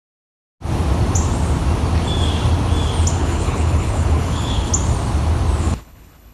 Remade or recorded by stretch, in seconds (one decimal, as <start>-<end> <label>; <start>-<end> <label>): 0.0-3.1 recorded; 3.1-4.7 remade; 4.7-5.6 recorded; 5.6-6.3 remade